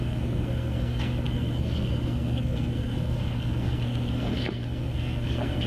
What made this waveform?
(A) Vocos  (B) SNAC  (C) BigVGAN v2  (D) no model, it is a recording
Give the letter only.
B